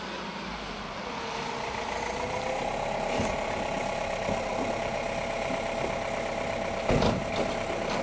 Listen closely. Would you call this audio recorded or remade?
recorded